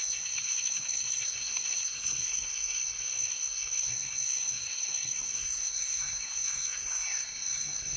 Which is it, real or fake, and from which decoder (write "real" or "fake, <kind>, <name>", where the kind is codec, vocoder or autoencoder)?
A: fake, codec, SNAC